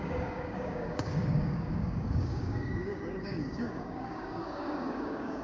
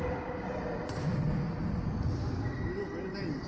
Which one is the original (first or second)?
second